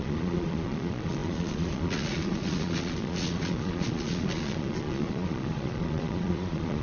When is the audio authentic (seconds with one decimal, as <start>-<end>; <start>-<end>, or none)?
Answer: none